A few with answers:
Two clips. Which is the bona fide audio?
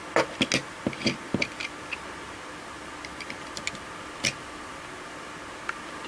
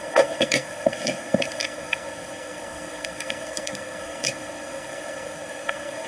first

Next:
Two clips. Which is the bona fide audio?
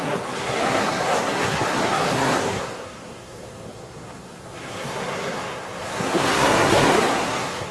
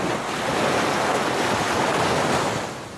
second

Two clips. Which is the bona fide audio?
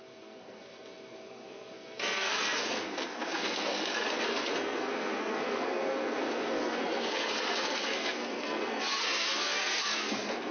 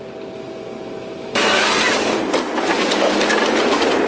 second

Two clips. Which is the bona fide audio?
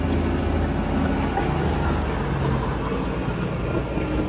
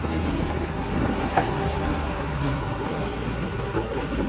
first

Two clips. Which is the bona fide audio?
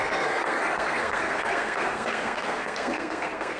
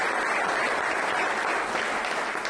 second